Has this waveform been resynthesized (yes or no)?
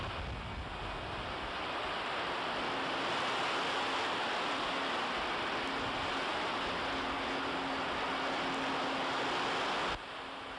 no